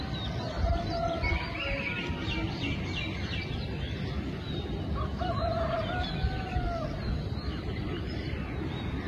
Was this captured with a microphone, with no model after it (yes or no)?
yes